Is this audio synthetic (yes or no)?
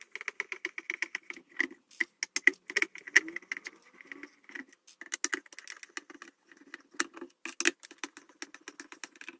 no